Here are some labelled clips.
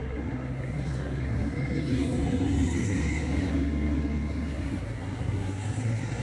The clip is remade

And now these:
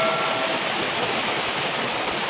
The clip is recorded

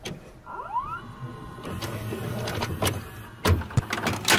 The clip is recorded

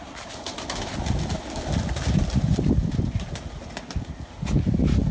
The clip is recorded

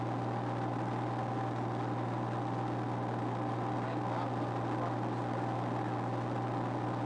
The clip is recorded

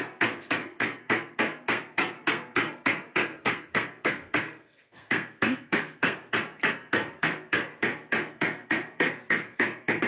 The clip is remade